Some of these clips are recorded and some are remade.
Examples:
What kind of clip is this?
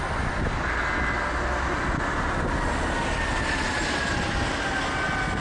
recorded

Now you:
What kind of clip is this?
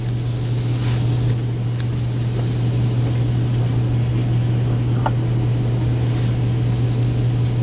recorded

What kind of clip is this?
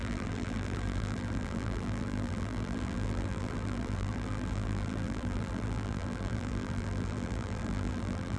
remade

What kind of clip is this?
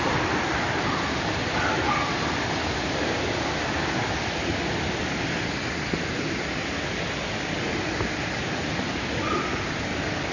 recorded